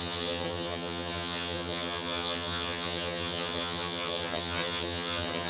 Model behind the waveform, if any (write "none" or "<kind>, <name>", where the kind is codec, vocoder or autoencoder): vocoder, HiFi-GAN